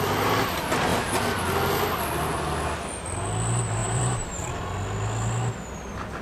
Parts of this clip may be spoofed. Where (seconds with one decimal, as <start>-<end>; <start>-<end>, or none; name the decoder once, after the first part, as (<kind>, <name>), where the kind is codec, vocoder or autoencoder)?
3.8-4.5 (vocoder, BigVGAN v2)

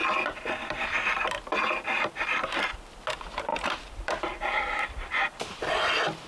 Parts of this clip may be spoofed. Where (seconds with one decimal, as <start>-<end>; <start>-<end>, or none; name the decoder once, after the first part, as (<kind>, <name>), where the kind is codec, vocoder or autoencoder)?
0.0-2.7 (vocoder, BigVGAN v2); 3.5-5.7

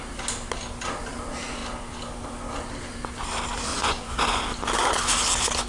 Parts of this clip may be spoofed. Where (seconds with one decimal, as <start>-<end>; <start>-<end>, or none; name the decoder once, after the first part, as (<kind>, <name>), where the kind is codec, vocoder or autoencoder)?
3.7-4.4 (vocoder, Vocos)

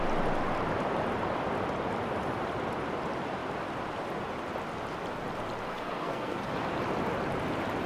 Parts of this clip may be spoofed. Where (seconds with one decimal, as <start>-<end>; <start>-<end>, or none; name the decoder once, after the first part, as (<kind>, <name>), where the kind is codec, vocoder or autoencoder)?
5.7-6.4 (codec, SNAC)

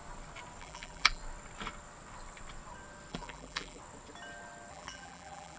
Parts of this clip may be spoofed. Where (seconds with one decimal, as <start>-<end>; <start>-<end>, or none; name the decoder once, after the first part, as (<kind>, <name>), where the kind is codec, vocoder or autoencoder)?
0.6-1.2 (vocoder, BigVGAN v2); 3.1-3.8; 4.7-5.6

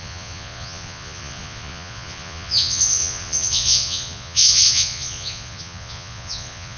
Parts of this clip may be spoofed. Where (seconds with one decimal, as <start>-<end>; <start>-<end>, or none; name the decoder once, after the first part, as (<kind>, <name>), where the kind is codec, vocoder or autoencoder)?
0.0-6.8 (vocoder, Vocos)

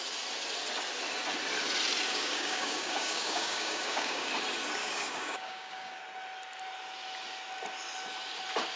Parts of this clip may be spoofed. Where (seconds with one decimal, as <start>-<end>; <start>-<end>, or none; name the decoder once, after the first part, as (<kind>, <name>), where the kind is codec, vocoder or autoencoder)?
2.1-4.3 (codec, DAC); 4.8-6.0